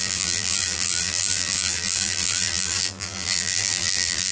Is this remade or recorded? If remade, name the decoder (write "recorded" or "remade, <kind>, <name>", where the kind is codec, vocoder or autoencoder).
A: remade, vocoder, BigVGAN v2